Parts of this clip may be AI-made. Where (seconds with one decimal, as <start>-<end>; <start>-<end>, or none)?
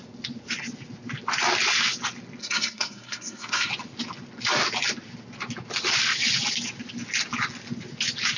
2.4-3.7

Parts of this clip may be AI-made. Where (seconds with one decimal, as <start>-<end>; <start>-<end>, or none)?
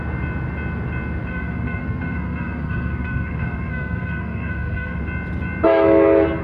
1.3-5.0